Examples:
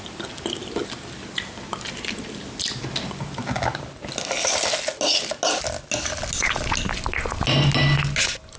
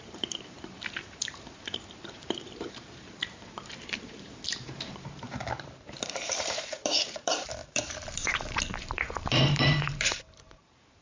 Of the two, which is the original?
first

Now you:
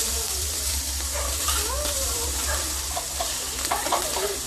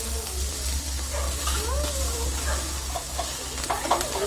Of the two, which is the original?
second